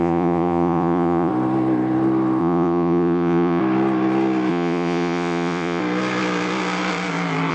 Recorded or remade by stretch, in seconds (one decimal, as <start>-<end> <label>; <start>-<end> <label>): 0.0-1.3 remade; 1.3-2.4 recorded; 2.4-3.6 remade; 3.6-4.5 recorded; 4.5-5.8 remade; 5.8-7.5 recorded